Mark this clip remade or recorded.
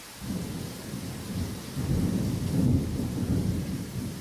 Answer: recorded